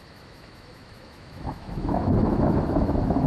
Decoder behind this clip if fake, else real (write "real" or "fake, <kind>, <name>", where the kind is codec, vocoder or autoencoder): fake, autoencoder, DAC-VAE